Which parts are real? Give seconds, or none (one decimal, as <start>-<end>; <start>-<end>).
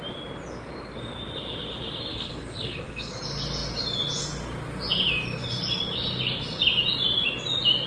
0.0-2.1; 3.2-7.9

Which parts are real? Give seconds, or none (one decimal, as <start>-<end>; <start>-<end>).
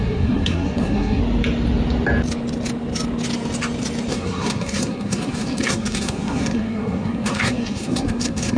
1.2-4.1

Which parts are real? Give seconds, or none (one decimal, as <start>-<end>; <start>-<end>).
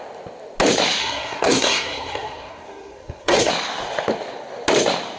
0.0-1.0; 3.5-5.2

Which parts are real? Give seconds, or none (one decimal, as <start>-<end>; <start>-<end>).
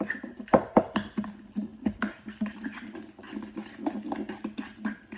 0.0-5.2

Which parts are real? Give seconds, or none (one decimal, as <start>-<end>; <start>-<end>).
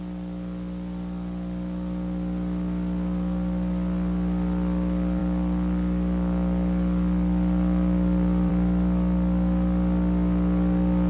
0.0-11.1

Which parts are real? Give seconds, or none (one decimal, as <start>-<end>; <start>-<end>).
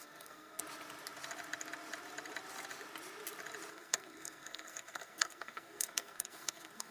0.6-3.7